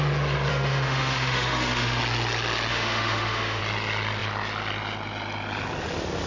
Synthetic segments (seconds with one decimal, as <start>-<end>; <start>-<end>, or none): 0.5-2.0; 2.7-3.6